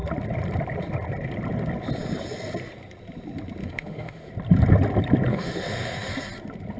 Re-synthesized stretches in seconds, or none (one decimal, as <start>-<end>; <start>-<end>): 3.6-4.3; 5.3-6.1